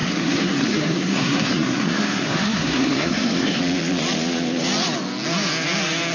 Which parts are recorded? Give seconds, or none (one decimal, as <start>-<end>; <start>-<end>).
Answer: 3.6-6.1